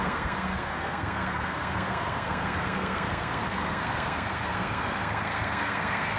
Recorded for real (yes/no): no